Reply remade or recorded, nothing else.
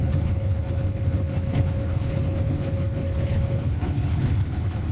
remade